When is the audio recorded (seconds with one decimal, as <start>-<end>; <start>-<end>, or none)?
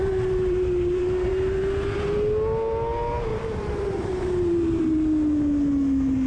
1.3-3.3; 4.8-6.3